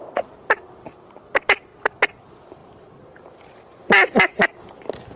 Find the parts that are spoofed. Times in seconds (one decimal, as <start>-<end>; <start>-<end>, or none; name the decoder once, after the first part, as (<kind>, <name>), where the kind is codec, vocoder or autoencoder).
2.6-4.6 (vocoder, BigVGAN v2)

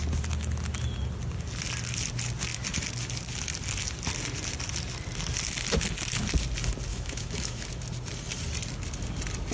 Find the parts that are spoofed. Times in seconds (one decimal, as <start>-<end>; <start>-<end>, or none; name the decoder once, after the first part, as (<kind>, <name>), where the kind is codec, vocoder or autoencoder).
6.9-7.7 (autoencoder, DAC-VAE)